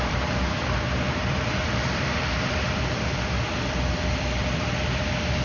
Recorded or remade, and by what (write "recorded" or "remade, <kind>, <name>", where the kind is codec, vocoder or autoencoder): remade, vocoder, BigVGAN v2